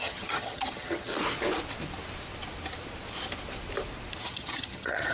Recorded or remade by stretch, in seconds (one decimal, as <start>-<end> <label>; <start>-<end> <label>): 0.0-1.1 remade; 1.1-4.2 recorded; 4.2-5.1 remade